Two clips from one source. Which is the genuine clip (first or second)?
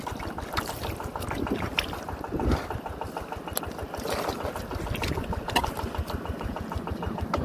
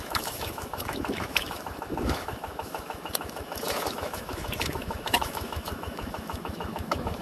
first